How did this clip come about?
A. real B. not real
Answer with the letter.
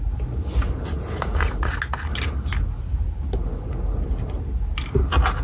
A